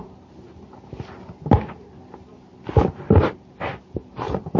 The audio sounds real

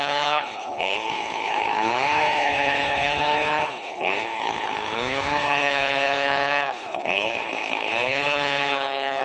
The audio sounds fake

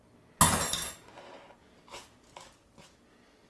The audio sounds real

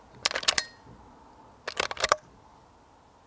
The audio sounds real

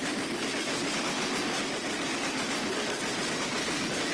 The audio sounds real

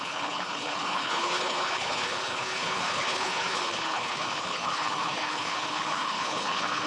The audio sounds fake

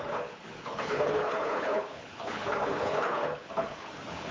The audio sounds fake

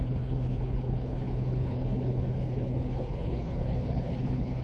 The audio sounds fake